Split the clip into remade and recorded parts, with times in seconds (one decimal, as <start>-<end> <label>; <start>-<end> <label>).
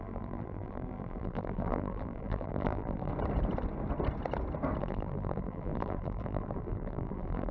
0.0-3.1 remade; 3.1-4.8 recorded; 4.8-7.5 remade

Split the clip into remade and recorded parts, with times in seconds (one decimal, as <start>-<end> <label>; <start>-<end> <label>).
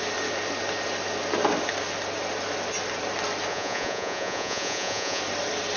0.0-3.5 recorded; 3.5-5.2 remade; 5.2-5.8 recorded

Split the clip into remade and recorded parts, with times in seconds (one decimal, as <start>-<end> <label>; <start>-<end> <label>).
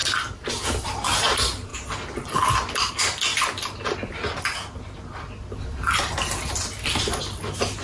0.0-3.3 recorded; 3.3-4.1 remade; 4.1-7.8 recorded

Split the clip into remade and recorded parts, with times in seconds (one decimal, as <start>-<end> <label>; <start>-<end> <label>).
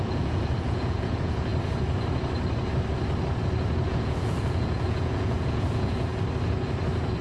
0.0-1.5 remade; 1.5-3.9 recorded; 3.9-6.1 remade; 6.1-7.2 recorded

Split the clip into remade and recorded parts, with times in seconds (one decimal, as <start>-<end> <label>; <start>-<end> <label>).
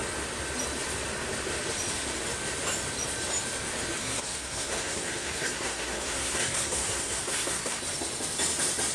0.0-4.0 recorded; 4.0-7.8 remade; 7.8-8.9 recorded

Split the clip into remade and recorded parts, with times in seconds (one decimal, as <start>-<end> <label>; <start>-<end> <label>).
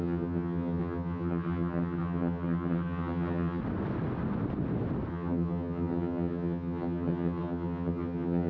0.0-3.6 remade; 3.6-5.1 recorded; 5.1-8.5 remade